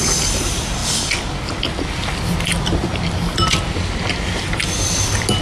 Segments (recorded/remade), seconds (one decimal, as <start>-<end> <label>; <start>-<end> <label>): 0.0-5.4 recorded

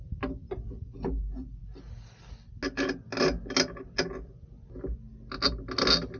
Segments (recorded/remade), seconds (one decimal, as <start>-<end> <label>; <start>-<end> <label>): 0.0-6.2 recorded

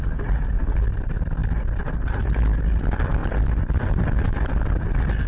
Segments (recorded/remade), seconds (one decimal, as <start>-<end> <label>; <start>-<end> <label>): 0.0-5.3 recorded

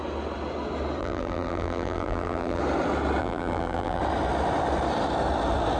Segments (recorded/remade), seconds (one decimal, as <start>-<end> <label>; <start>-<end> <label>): 0.0-1.0 recorded; 1.0-2.6 remade; 2.6-3.2 recorded; 3.2-4.0 remade; 4.0-5.8 recorded

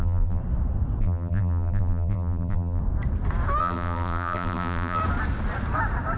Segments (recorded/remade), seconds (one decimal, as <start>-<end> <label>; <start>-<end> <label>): 0.0-0.4 remade; 0.4-1.0 recorded; 1.0-2.8 remade; 2.8-3.6 recorded; 3.6-5.0 remade; 5.0-6.2 recorded

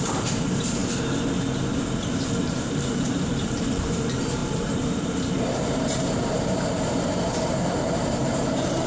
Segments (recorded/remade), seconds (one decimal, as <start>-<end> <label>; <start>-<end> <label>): 0.0-0.8 remade; 0.8-2.4 recorded; 2.4-8.9 remade

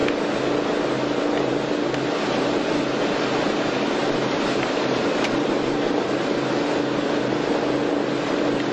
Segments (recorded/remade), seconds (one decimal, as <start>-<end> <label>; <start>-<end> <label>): 0.0-4.0 recorded; 4.0-6.3 remade; 6.3-8.7 recorded